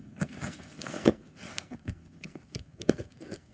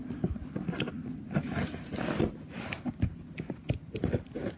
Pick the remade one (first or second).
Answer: first